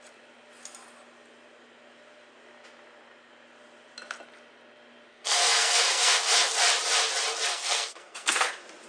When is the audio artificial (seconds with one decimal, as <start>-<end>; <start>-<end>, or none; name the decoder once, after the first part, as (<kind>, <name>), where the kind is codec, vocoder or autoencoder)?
5.1-6.2 (codec, SNAC); 7.5-8.5